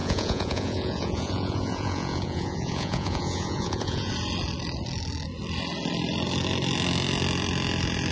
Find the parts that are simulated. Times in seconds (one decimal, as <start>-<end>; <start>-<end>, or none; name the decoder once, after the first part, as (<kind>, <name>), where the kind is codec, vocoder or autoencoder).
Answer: 0.0-4.1 (vocoder, Vocos)